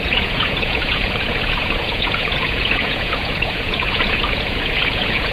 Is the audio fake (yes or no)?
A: yes